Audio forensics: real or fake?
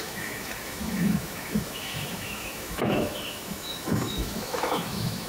fake